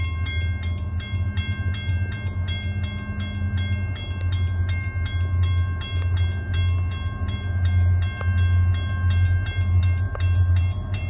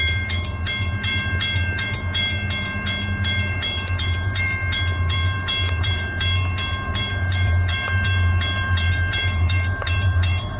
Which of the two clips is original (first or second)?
first